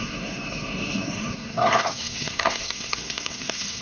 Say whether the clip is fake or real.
fake